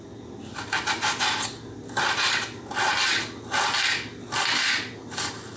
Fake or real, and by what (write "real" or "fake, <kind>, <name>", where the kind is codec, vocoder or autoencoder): real